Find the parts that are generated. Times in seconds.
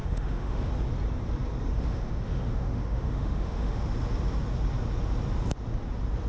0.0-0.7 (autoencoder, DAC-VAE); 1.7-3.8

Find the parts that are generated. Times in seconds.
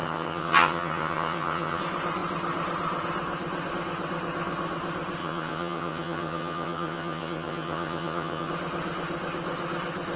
0.0-1.8 (vocoder, HiFi-GAN); 5.2-8.5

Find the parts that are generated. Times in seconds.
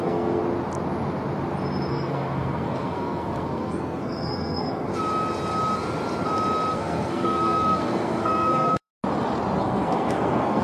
0.0-0.4 (codec, SNAC); 1.9-4.9; 6.7-8.9; 9.6-10.6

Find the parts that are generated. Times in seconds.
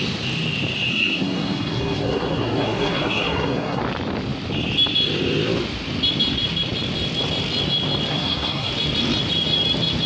0.9-3.8 (codec, SNAC); 8.1-8.7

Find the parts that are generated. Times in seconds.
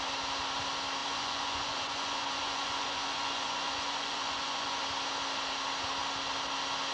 1.0-4.8 (vocoder, Vocos)